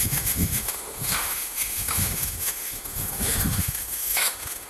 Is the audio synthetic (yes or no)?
yes